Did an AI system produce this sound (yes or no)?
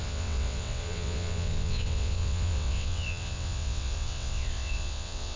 yes